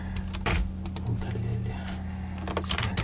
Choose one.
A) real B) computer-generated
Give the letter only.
A